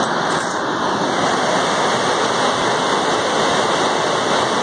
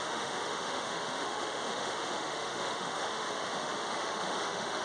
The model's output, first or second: second